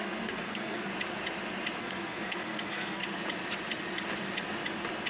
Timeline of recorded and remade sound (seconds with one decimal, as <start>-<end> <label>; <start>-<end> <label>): 0.0-0.9 remade; 0.9-1.8 recorded; 1.8-3.0 remade; 3.0-5.1 recorded